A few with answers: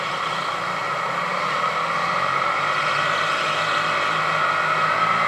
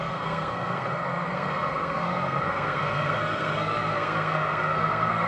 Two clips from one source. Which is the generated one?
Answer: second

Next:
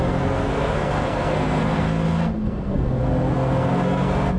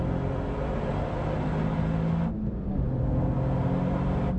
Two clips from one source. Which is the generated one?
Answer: first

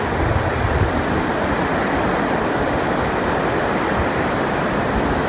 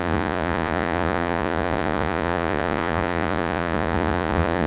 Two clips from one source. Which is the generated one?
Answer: second